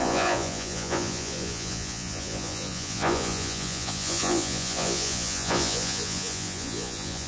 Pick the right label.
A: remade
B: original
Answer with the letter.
A